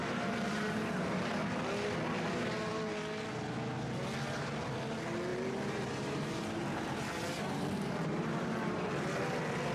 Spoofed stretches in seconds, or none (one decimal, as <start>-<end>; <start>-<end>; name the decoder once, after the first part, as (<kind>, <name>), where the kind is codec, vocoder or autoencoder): 0.0-1.3 (vocoder, BigVGAN v2); 5.3-8.9